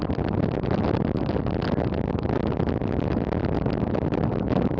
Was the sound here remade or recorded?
recorded